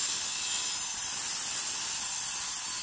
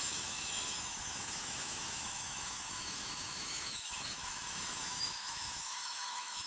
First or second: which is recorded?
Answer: first